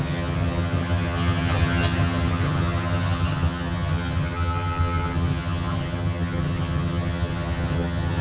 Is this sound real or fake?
fake